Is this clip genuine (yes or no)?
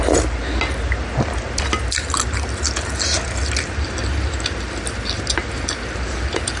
yes